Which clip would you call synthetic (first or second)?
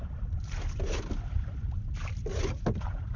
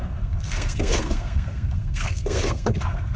second